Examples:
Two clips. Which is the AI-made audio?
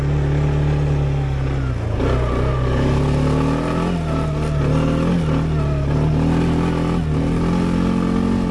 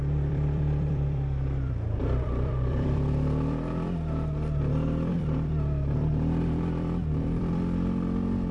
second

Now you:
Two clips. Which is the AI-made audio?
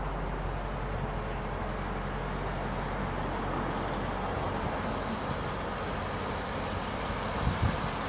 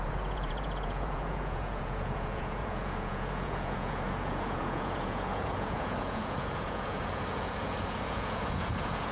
second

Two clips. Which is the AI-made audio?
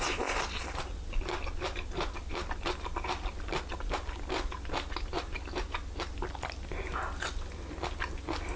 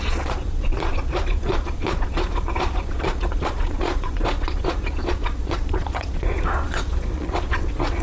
second